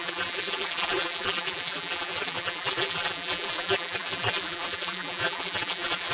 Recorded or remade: remade